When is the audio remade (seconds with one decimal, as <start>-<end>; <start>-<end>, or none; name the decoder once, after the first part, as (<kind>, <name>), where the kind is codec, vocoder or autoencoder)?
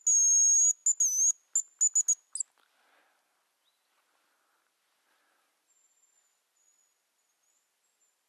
none